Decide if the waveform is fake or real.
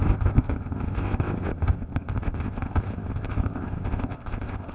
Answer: fake